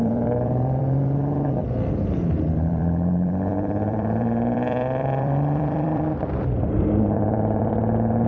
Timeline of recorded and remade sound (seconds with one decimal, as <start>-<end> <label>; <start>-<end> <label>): 0.0-8.3 remade